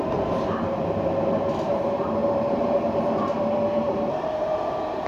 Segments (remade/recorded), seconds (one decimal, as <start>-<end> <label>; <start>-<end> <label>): 0.0-5.1 remade

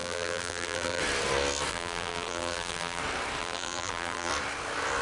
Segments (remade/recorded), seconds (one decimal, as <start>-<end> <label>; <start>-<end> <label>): 0.0-1.0 remade; 1.0-1.7 recorded; 1.7-3.0 remade; 3.0-3.4 recorded; 3.4-4.3 remade; 4.3-5.0 recorded

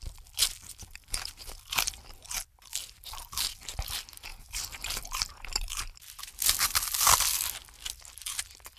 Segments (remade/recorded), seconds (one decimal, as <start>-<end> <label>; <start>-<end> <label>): 0.0-4.3 recorded; 4.3-7.4 remade; 7.4-8.8 recorded

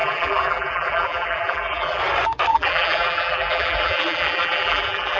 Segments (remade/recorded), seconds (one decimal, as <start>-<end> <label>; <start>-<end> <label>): 0.0-2.0 remade; 2.0-2.5 recorded; 2.5-5.2 remade

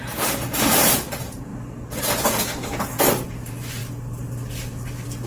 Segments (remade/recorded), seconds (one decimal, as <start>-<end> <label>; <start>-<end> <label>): 0.0-1.5 remade; 1.5-2.0 recorded; 2.0-3.8 remade; 3.8-5.3 recorded

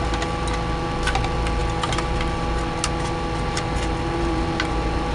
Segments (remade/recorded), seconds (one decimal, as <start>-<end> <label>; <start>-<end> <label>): 0.0-5.1 recorded